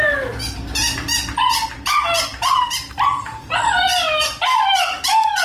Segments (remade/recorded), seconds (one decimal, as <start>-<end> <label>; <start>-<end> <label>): 0.0-3.9 recorded; 3.9-5.4 remade